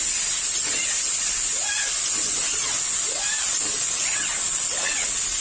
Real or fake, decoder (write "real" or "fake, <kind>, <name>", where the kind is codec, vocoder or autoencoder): real